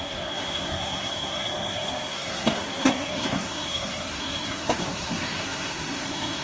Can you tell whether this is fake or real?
fake